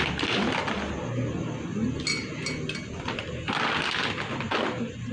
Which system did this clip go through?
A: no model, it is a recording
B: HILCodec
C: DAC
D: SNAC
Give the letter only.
A